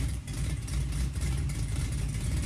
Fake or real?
fake